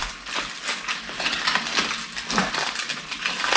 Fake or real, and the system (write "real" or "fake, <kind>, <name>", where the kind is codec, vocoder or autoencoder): real